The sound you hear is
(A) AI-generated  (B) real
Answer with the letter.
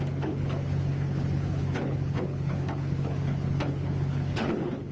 A